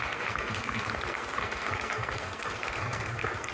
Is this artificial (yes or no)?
yes